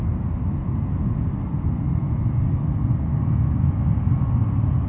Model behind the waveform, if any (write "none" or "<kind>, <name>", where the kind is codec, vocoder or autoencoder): none